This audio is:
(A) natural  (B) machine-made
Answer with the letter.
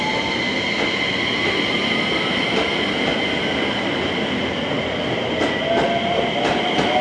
A